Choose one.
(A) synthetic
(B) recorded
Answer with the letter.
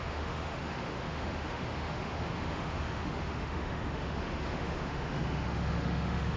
A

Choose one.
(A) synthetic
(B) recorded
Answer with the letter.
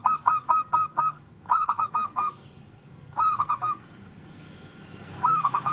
A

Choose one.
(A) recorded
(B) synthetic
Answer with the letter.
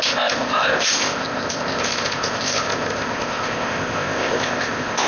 B